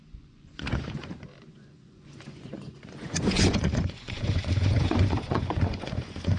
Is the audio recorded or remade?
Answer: remade